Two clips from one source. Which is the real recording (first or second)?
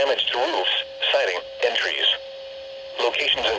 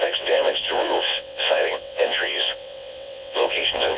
first